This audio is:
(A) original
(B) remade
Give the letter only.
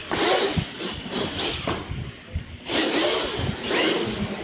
A